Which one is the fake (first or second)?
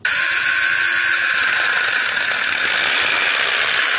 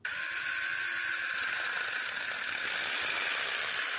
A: second